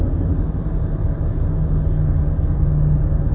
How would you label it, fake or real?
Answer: real